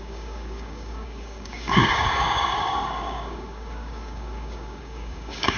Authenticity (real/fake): fake